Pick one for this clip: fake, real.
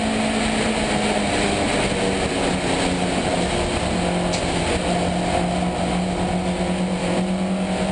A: real